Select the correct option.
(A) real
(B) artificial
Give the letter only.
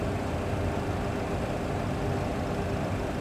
A